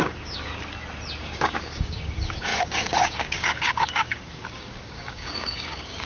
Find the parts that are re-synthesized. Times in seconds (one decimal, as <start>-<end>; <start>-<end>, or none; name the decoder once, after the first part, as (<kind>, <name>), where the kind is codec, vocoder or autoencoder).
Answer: 0.0-0.5 (codec, DAC); 1.2-6.1